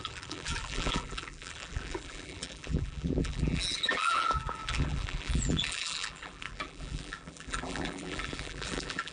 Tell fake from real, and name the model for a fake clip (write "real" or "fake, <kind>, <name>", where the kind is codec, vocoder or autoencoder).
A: fake, vocoder, BigVGAN v2